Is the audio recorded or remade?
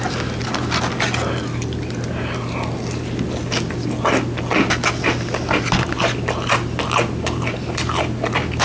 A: recorded